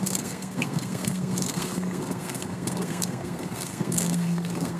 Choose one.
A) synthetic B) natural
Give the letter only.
A